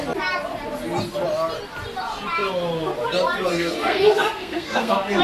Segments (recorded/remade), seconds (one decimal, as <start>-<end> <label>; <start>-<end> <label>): 0.0-3.5 recorded; 3.5-5.2 remade